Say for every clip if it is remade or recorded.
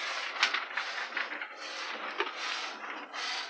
recorded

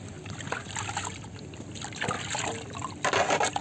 recorded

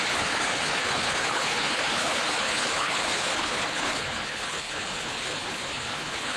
remade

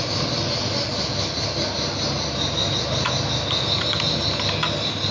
recorded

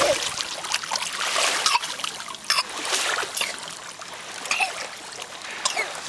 recorded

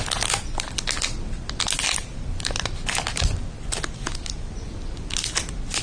recorded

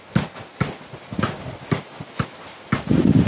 recorded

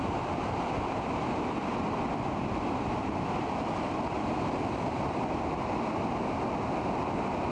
recorded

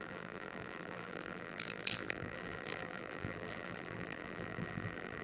remade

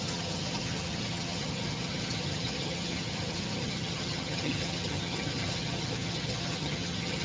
remade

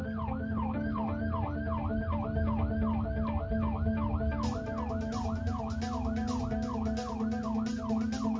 recorded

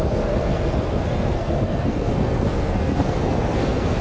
remade